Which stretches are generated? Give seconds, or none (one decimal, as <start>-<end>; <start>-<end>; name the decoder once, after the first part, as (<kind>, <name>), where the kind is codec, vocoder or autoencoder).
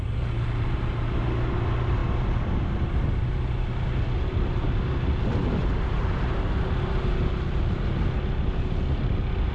none